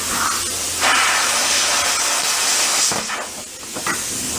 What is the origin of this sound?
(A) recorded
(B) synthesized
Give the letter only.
A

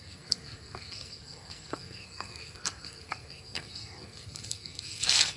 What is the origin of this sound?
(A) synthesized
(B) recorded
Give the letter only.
A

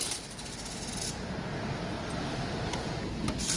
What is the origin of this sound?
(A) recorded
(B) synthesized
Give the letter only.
A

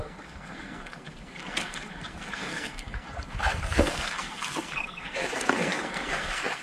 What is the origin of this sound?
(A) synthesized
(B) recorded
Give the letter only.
A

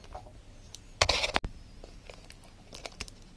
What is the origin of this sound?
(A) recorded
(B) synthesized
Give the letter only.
A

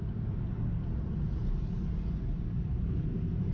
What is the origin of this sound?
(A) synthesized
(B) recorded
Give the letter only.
A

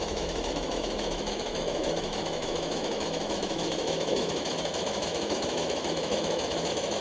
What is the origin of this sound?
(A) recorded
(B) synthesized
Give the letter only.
B